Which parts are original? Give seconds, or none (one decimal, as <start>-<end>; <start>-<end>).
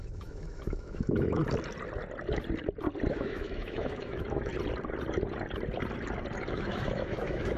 1.4-3.1; 4.5-6.5